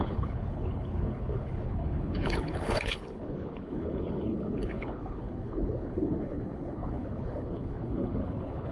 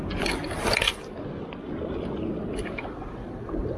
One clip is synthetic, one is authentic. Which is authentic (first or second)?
second